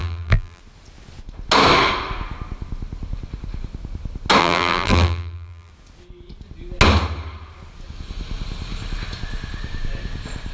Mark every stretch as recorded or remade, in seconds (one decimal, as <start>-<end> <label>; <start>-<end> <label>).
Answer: 0.0-0.6 remade; 0.6-4.4 recorded; 4.4-5.7 remade; 5.7-10.5 recorded